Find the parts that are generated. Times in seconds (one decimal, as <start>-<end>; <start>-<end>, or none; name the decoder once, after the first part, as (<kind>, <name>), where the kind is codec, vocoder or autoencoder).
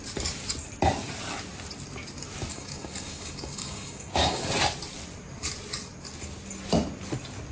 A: 2.5-4.4 (codec, DAC)